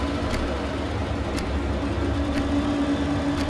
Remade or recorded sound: recorded